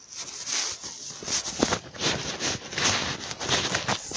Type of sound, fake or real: real